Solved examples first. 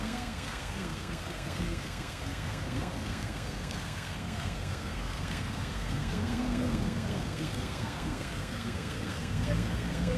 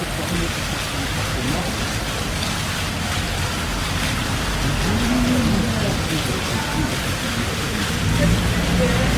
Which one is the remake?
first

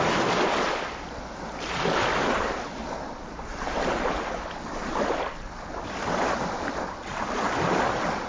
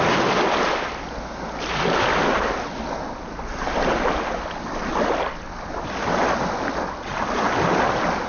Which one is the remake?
first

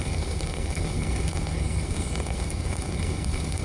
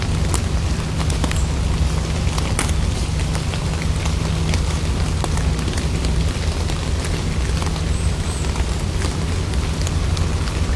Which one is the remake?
first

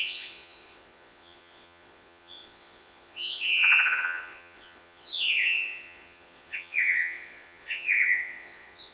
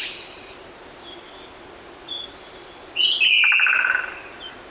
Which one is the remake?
first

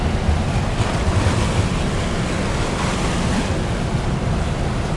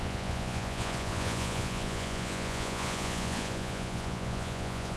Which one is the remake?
second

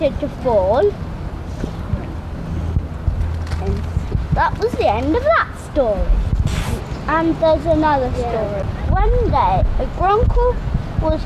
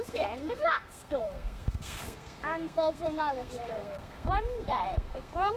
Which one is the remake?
second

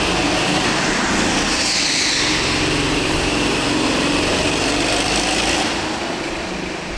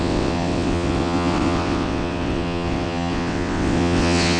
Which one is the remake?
second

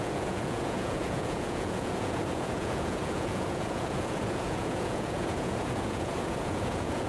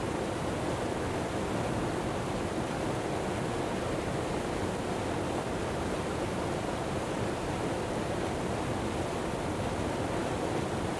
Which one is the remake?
first